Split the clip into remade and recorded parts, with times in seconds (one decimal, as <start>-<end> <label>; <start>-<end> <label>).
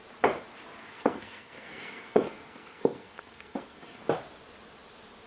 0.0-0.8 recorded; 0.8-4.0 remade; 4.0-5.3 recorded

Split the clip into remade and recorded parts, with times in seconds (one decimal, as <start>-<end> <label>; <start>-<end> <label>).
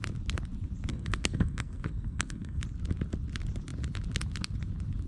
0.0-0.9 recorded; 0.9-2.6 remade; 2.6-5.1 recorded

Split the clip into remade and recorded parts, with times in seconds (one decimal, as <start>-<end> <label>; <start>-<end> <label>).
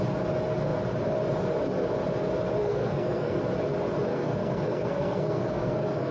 0.0-2.6 recorded; 2.6-3.4 remade; 3.4-4.1 recorded; 4.1-6.1 remade